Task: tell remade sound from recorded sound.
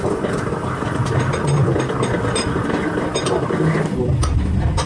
recorded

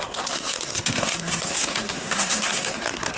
remade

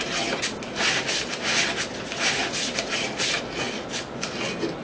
recorded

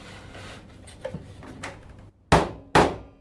recorded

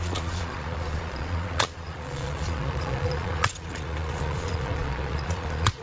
remade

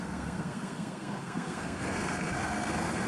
remade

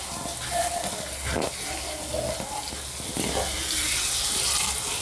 recorded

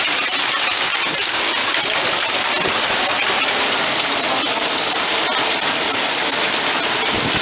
recorded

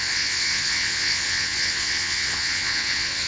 remade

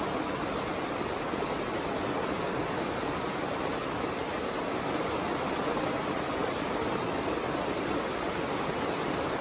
recorded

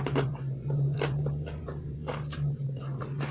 remade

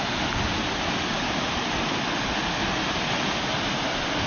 recorded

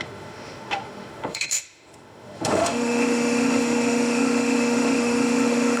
remade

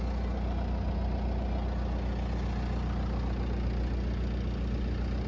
recorded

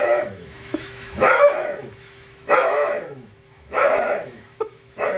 remade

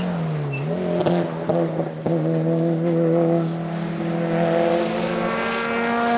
recorded